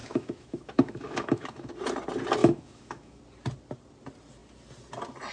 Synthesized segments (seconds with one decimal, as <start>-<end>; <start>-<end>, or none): 0.0-1.7; 2.4-3.2